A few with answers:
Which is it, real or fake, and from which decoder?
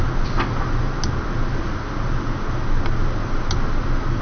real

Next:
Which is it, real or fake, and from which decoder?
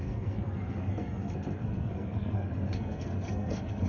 fake, codec, SNAC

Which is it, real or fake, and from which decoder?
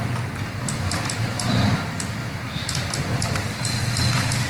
real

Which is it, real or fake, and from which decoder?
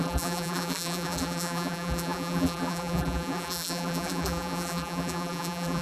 fake, vocoder, BigVGAN v2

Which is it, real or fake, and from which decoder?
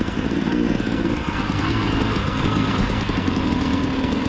fake, codec, SNAC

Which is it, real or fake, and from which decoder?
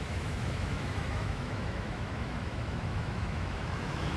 fake, autoencoder, DAC-VAE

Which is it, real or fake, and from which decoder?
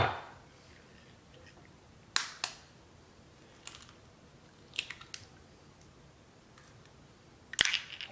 real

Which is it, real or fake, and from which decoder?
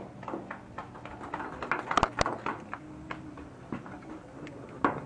real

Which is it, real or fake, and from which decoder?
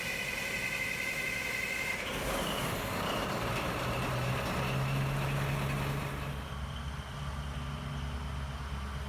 real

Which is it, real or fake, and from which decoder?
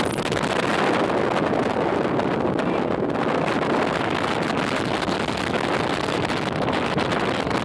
real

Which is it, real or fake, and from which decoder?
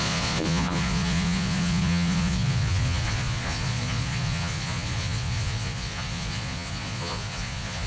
fake, vocoder, Vocos